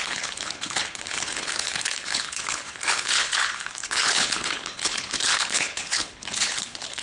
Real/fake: fake